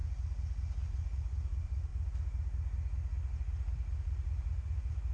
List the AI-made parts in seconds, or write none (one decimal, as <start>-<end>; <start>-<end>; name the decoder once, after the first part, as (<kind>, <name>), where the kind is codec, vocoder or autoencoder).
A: 0.9-1.9 (vocoder, BigVGAN v2); 3.3-5.1